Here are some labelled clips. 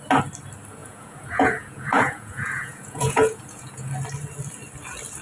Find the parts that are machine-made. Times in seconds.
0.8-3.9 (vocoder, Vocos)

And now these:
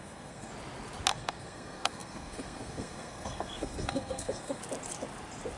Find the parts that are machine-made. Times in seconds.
0.0-0.5 (codec, SNAC); 1.1-4.6